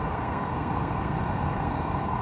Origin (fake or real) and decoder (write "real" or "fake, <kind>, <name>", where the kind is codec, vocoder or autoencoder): fake, codec, SNAC